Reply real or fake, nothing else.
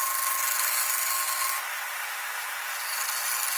real